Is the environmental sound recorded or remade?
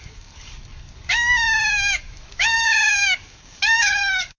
remade